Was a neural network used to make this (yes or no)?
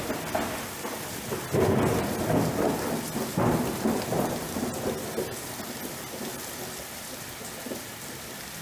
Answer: no